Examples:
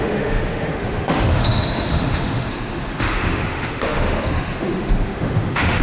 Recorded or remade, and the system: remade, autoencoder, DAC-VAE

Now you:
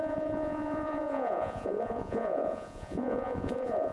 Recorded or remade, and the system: remade, vocoder, Vocos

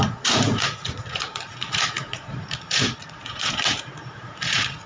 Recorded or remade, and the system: remade, vocoder, Vocos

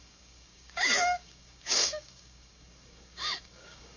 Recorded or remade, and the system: remade, codec, DAC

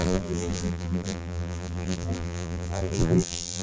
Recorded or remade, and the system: remade, vocoder, BigVGAN v2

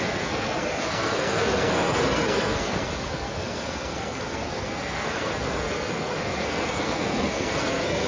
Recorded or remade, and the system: remade, codec, SNAC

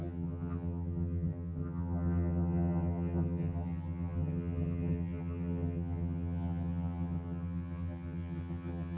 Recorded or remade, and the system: remade, vocoder, HiFi-GAN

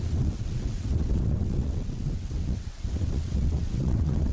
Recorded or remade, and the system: remade, vocoder, WaveNeXt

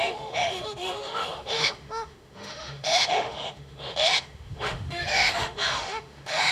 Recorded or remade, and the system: remade, autoencoder, DAC-VAE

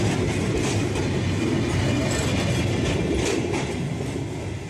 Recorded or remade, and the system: recorded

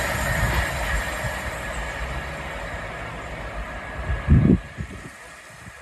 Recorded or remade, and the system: recorded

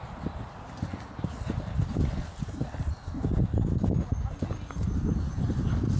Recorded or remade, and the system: recorded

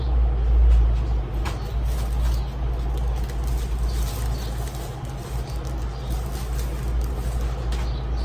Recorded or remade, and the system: recorded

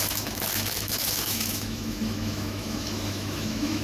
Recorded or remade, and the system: remade, autoencoder, DAC-VAE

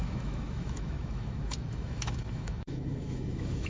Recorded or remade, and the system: remade, autoencoder, DAC-VAE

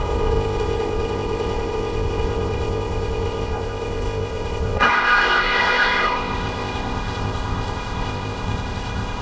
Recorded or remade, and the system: remade, codec, ZipCodec